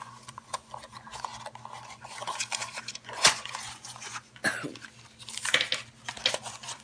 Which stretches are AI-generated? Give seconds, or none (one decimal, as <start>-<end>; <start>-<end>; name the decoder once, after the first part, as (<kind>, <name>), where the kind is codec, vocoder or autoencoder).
0.0-1.3 (vocoder, Vocos); 1.8-4.4; 6.3-6.8